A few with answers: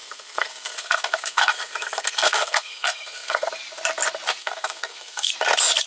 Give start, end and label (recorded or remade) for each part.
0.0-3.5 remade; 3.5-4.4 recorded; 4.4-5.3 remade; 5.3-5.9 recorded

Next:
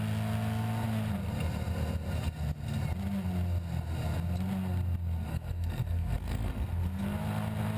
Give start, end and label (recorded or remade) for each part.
0.0-5.3 recorded; 5.3-7.0 remade; 7.0-7.8 recorded

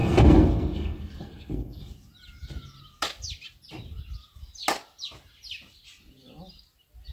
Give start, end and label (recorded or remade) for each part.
0.0-1.8 remade; 1.8-7.1 recorded

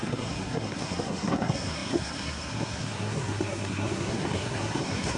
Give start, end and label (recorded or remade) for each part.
0.0-5.2 remade